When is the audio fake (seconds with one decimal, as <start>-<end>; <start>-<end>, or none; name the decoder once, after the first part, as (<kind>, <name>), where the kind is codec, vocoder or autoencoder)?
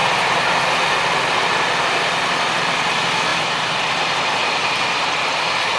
none